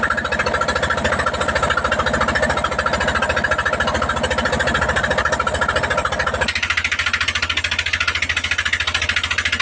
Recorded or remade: recorded